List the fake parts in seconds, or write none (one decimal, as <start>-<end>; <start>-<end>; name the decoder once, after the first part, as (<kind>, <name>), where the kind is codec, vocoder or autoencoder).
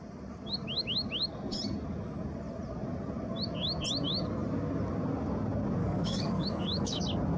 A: 5.8-7.0 (codec, DAC)